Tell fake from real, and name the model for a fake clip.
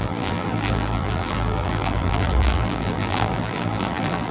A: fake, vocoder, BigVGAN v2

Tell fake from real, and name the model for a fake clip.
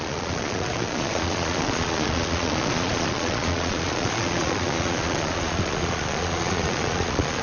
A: fake, vocoder, Vocos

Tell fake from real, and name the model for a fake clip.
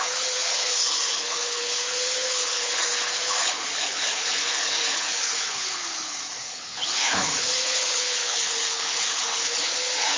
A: fake, codec, HILCodec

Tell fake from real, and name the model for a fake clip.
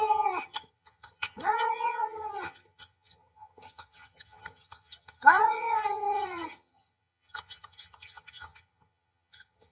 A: fake, vocoder, HiFi-GAN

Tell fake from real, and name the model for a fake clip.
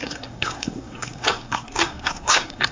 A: fake, codec, SNAC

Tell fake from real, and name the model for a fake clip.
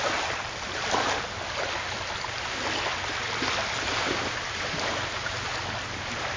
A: real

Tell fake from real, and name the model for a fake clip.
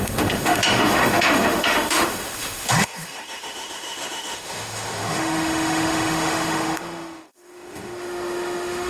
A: fake, autoencoder, DAC-VAE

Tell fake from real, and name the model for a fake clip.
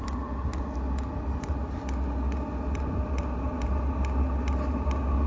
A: real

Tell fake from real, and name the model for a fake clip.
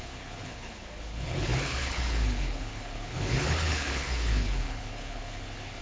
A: fake, codec, HILCodec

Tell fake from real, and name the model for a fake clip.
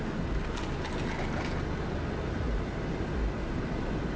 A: real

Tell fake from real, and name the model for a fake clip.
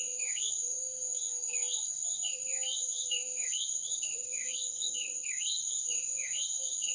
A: fake, codec, SNAC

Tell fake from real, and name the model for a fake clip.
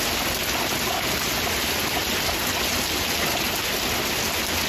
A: real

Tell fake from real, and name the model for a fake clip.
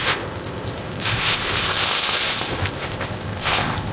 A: fake, codec, ZipCodec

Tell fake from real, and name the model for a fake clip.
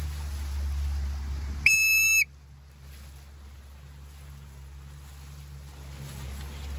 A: real